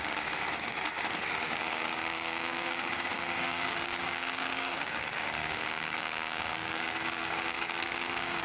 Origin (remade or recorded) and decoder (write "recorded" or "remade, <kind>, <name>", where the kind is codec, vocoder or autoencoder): remade, codec, DAC